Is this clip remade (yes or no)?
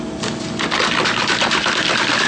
no